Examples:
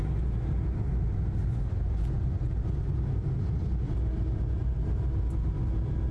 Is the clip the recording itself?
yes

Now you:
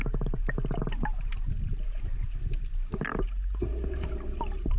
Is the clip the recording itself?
yes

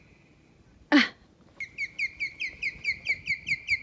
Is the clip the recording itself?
yes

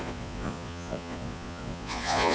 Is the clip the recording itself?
no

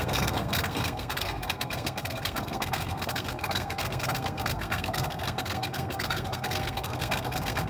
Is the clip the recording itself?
no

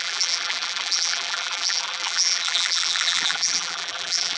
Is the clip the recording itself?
no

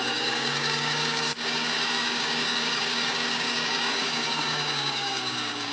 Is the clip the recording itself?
no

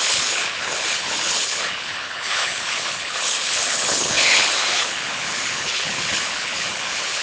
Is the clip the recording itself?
no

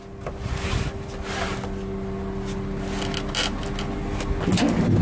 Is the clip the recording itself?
yes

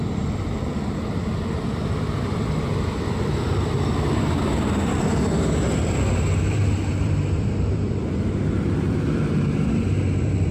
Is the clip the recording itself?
no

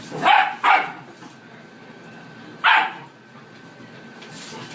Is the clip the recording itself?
yes